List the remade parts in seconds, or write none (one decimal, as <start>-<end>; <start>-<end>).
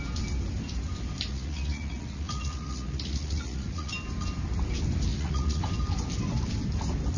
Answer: 1.3-3.9; 5.1-5.7